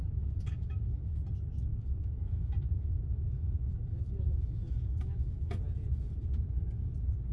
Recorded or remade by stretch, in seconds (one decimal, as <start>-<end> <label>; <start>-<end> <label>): 0.0-1.2 remade; 1.2-1.7 recorded; 1.7-5.6 remade; 5.6-7.3 recorded